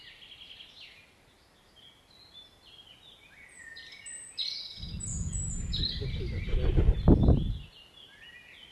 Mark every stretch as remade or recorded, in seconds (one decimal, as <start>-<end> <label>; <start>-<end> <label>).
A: 0.0-5.1 recorded; 5.1-5.8 remade; 5.8-8.7 recorded